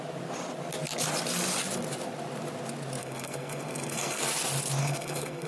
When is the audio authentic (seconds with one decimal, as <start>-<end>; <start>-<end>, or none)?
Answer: 0.0-3.0; 4.2-4.8